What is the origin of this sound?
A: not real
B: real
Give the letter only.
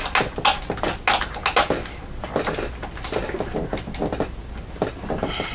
B